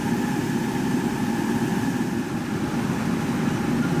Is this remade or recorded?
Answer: recorded